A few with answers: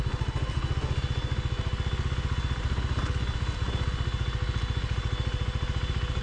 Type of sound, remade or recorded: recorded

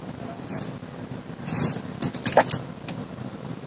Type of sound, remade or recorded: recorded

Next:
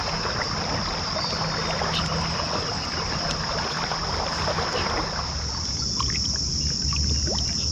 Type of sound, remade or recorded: recorded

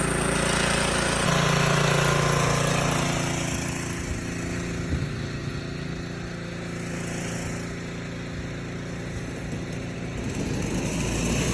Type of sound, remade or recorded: recorded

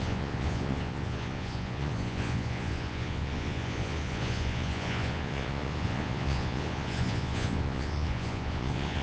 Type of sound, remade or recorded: remade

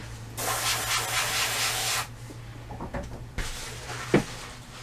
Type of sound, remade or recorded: recorded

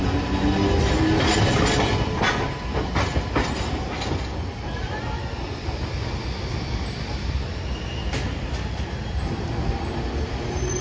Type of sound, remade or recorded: recorded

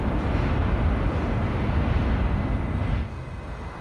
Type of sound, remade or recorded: recorded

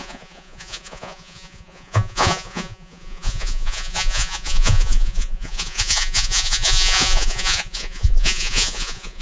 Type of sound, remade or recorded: remade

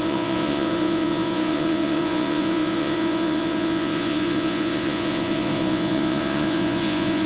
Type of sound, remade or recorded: remade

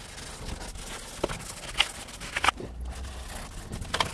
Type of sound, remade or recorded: recorded